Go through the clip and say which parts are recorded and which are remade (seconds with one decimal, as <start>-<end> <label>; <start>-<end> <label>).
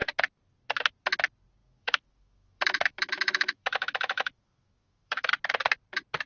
0.0-1.6 recorded; 1.6-5.3 remade; 5.3-6.3 recorded